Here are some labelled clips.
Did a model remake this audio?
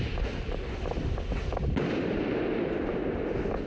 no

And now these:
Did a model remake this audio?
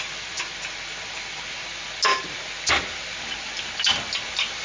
no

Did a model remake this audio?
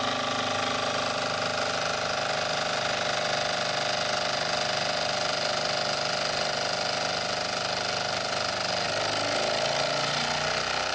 no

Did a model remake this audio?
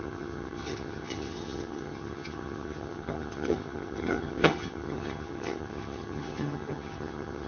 yes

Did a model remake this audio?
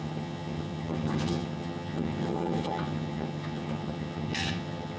yes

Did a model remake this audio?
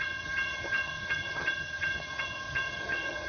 yes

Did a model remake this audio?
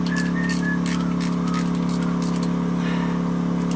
no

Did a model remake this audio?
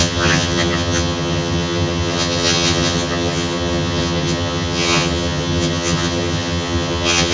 yes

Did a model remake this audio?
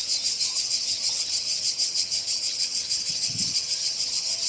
yes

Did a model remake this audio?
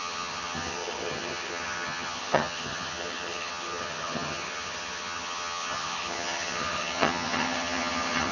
yes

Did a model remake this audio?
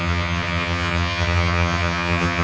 yes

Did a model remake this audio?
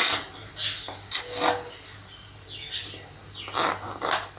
no